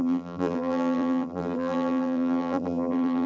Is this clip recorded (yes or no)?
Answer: no